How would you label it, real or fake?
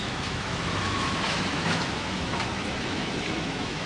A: fake